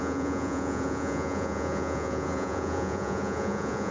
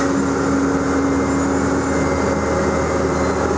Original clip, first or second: second